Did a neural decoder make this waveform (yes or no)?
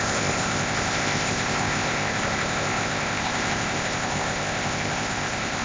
yes